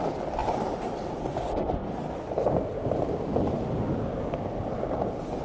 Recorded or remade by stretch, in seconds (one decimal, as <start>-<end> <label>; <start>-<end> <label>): 0.0-5.4 recorded